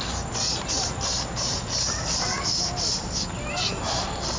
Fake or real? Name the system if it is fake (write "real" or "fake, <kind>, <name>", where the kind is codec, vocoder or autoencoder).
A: real